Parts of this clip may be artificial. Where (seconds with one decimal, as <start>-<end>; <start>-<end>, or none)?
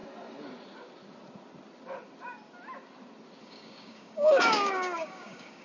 3.4-5.6